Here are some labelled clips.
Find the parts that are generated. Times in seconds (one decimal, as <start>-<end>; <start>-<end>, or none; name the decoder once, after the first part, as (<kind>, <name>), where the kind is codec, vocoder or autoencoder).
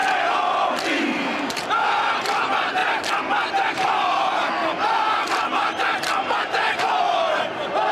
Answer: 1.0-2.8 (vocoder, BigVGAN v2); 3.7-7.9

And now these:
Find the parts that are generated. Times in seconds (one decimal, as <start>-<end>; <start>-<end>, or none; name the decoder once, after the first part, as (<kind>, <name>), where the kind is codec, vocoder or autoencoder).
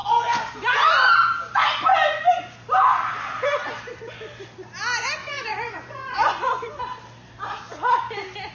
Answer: 1.9-2.4 (vocoder, Vocos); 5.2-6.8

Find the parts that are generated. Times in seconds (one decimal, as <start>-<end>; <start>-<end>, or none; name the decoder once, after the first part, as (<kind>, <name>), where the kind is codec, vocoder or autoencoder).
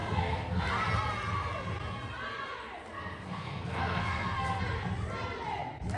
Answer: 0.0-0.6 (codec, SNAC); 2.9-4.6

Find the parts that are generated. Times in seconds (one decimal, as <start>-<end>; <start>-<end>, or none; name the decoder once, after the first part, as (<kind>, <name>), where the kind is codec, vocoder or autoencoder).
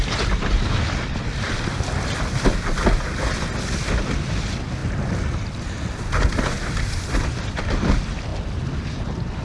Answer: none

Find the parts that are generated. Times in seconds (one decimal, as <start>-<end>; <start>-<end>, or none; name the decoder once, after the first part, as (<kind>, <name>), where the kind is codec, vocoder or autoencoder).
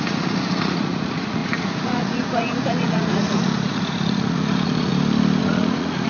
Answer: 0.0-4.9 (vocoder, Vocos); 5.4-6.1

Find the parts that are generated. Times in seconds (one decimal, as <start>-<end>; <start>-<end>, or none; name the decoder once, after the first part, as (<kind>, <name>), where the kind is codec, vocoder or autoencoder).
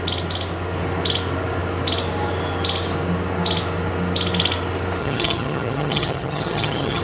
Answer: 5.0-7.0 (vocoder, HiFi-GAN)